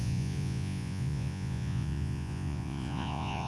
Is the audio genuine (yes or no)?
no